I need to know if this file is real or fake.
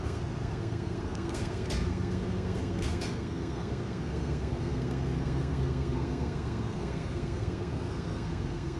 fake